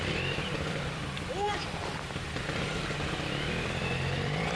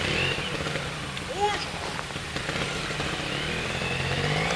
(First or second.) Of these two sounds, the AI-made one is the first